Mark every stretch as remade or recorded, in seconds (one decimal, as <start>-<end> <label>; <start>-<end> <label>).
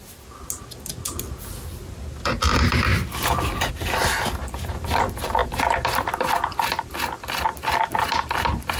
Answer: 0.0-8.8 recorded